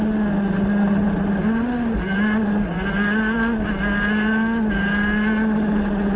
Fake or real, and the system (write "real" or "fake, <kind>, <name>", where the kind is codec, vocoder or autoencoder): real